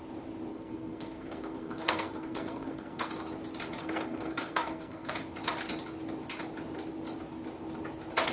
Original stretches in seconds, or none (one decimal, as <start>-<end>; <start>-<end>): 0.0-0.5; 3.1-3.8; 5.1-8.3